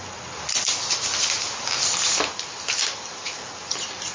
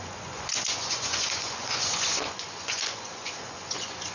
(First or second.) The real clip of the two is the first